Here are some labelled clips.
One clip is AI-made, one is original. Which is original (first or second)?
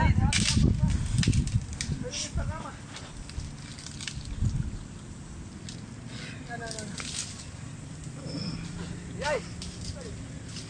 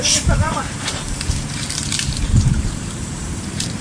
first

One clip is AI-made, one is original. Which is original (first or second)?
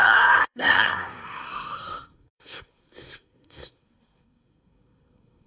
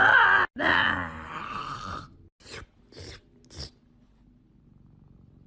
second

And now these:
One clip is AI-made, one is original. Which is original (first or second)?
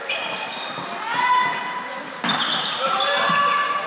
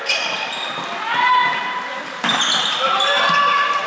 first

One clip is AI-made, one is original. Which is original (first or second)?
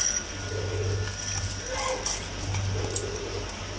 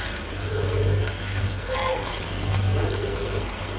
first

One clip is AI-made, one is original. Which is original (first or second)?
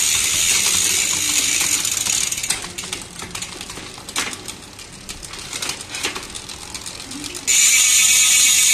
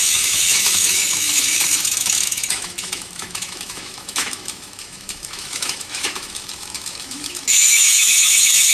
first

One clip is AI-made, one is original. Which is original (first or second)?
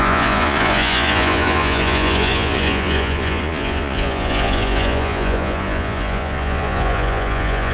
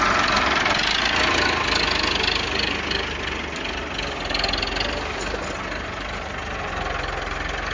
second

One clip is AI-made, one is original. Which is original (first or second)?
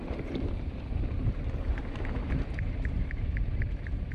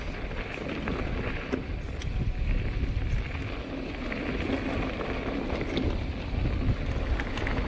second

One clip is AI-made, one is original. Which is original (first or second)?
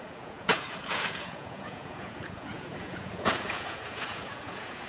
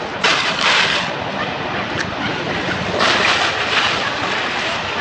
second